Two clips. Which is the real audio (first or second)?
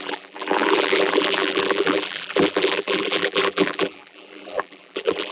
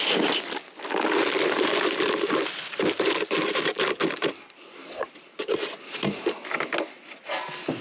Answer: second